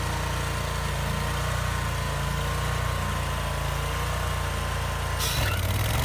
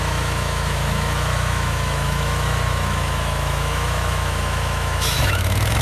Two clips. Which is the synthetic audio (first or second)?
second